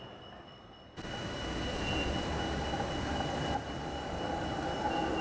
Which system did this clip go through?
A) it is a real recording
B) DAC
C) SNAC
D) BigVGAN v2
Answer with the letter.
A